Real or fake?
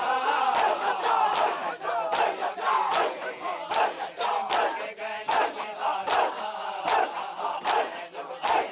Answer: real